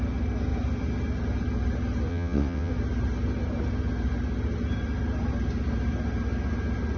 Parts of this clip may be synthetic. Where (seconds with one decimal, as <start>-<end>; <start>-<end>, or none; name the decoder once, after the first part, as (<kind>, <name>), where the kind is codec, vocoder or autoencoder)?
2.1-2.7 (vocoder, WaveNeXt)